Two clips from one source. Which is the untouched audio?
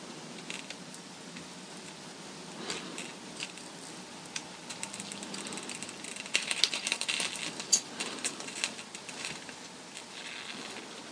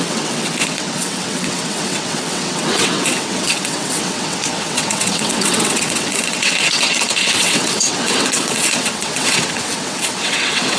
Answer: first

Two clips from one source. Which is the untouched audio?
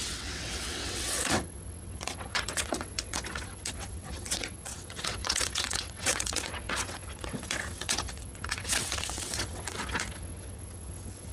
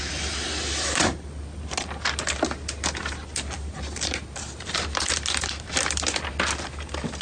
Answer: second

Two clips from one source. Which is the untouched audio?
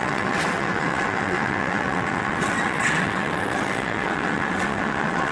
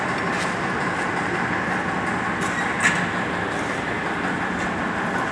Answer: second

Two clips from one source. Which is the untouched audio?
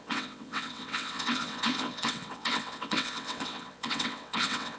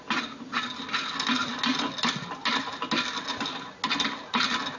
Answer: second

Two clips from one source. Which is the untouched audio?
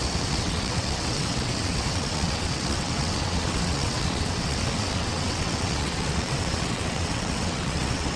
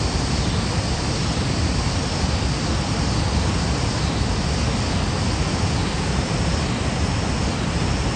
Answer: second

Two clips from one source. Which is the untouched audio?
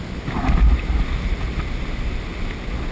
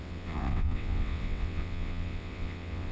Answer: first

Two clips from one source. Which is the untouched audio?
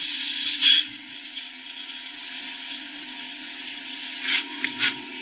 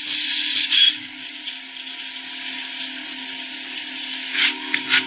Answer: second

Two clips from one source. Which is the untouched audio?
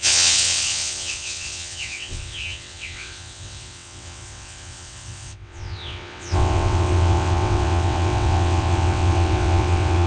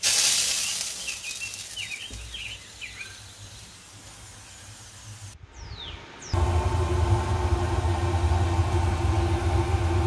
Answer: second